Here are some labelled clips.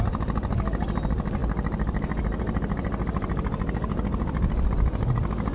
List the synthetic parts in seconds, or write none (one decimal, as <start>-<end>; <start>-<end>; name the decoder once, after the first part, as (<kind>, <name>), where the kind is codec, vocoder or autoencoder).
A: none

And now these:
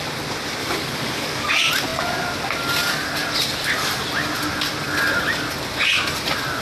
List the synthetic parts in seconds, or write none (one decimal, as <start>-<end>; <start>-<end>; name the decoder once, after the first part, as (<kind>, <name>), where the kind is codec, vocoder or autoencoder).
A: 0.6-1.5 (codec, DAC)

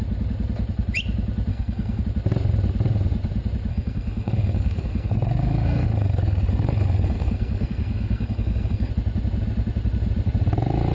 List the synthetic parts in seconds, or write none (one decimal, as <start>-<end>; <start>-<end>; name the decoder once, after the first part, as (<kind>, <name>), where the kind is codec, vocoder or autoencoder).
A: 1.5-2.0 (codec, SNAC); 3.7-8.9